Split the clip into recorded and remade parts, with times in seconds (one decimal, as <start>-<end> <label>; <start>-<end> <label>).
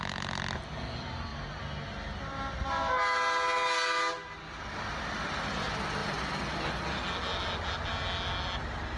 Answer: 0.0-9.0 recorded